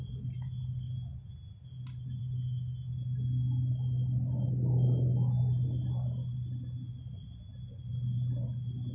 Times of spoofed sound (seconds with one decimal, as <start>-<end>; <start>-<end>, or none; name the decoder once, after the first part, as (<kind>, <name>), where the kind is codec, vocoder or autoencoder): none